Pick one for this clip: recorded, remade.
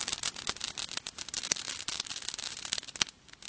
recorded